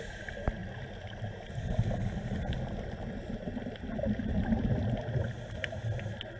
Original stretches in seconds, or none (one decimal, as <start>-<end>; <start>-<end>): 0.0-6.4